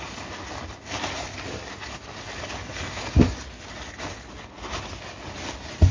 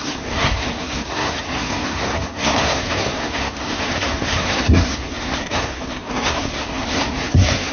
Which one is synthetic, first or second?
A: second